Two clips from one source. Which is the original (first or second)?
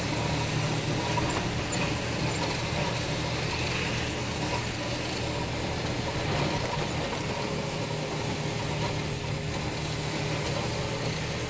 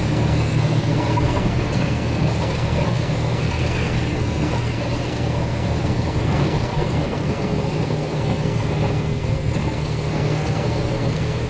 first